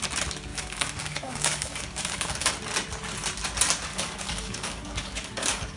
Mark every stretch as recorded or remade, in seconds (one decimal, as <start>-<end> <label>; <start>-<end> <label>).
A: 0.0-0.5 recorded; 0.5-2.5 remade; 2.5-3.9 recorded; 3.9-5.8 remade